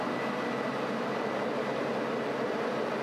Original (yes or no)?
yes